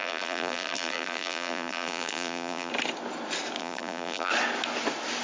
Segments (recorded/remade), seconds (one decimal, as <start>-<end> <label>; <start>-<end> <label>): 0.0-2.7 remade; 2.7-3.6 recorded; 3.6-4.3 remade; 4.3-5.2 recorded